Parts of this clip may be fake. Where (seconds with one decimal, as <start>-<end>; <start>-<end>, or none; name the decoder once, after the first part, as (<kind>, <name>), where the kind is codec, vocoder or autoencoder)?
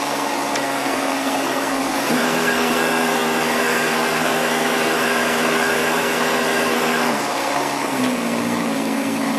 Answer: 0.0-9.4 (codec, SNAC)